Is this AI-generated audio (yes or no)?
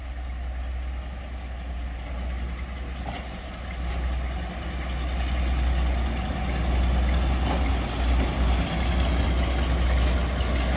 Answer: no